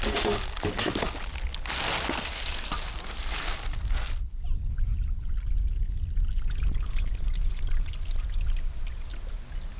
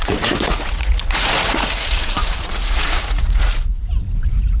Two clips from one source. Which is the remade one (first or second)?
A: second